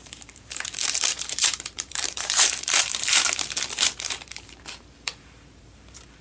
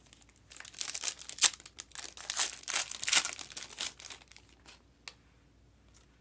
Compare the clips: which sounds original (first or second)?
second